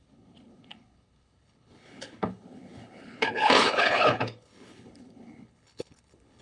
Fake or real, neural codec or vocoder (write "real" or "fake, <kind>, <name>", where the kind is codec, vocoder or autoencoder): fake, codec, HILCodec